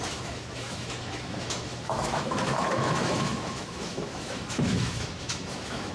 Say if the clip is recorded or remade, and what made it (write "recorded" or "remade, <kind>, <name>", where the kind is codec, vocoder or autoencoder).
remade, autoencoder, DAC-VAE